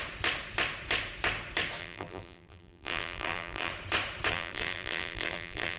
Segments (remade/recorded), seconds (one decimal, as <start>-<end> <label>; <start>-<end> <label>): 0.0-1.8 recorded; 1.8-3.7 remade; 3.7-4.3 recorded; 4.3-5.8 remade